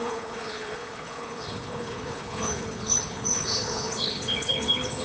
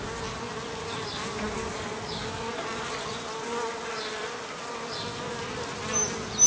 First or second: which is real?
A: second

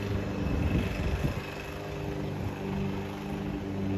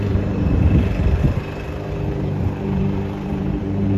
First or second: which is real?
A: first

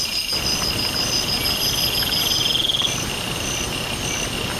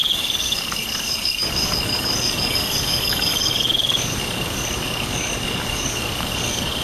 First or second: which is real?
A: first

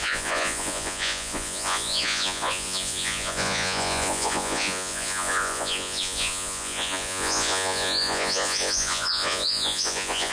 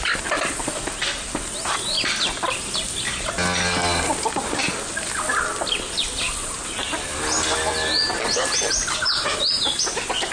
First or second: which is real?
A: second